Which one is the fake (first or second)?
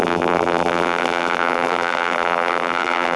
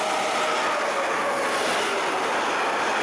first